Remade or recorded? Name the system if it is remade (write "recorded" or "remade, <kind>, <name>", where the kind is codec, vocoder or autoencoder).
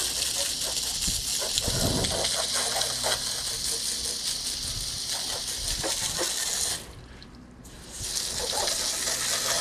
recorded